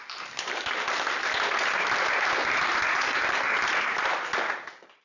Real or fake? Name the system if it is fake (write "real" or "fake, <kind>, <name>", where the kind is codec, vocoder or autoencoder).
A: fake, vocoder, BigVGAN v2